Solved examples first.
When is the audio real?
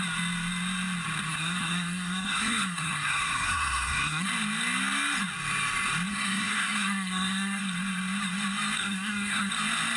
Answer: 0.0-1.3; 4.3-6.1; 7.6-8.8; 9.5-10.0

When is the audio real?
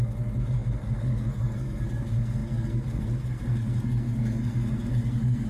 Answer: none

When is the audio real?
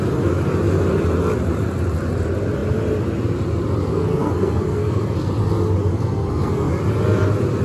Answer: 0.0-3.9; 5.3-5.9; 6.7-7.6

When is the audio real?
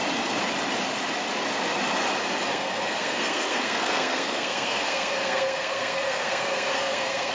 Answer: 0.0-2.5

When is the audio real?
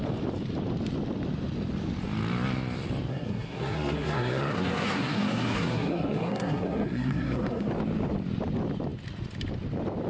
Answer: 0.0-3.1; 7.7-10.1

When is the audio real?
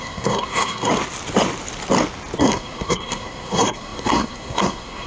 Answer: 0.9-2.4